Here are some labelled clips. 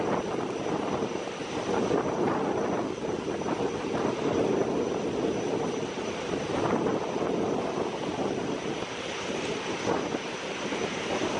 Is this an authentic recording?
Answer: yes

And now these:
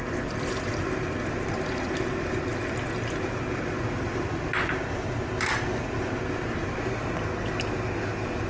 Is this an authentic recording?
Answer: yes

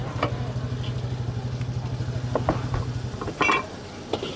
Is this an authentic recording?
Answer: yes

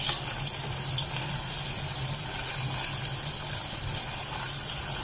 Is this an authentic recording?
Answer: yes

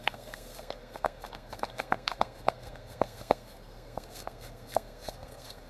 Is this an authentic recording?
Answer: no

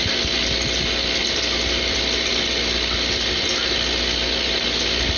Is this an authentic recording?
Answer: yes